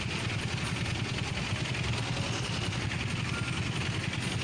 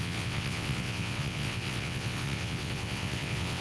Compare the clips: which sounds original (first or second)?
first